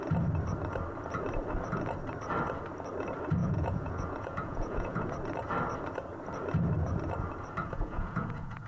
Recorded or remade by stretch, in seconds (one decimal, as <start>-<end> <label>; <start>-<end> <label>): 0.0-3.4 recorded; 3.4-5.1 remade; 5.1-7.6 recorded; 7.6-8.7 remade

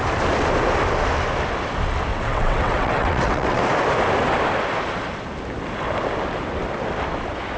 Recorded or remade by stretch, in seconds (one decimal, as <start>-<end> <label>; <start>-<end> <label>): 0.0-2.1 recorded; 2.1-3.6 remade; 3.6-7.6 recorded

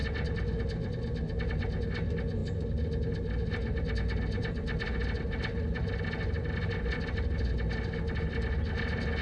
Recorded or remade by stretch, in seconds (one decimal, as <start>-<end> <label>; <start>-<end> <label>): 0.0-9.2 recorded

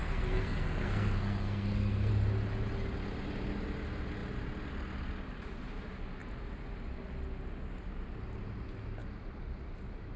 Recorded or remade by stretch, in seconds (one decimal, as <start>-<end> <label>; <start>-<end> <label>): 0.0-2.1 remade; 2.1-10.2 recorded

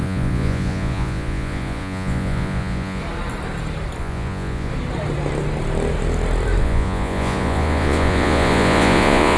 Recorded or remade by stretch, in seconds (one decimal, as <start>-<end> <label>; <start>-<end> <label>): 0.0-3.0 remade; 3.0-4.0 recorded; 4.0-4.7 remade; 4.7-6.6 recorded; 6.6-9.4 remade

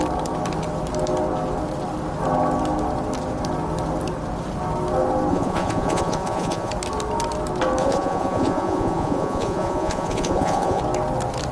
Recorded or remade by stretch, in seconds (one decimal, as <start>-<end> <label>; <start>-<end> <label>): 0.0-5.3 recorded; 5.3-6.7 remade; 6.7-7.8 recorded; 7.8-10.8 remade; 10.8-11.5 recorded